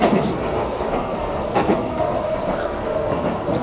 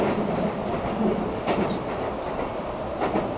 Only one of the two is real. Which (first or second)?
second